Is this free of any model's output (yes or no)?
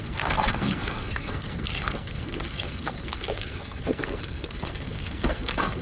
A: no